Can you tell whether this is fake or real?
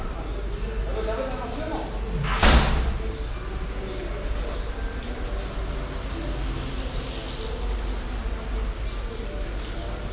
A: real